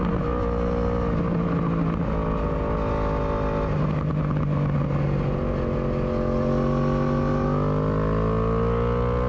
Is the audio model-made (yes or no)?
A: no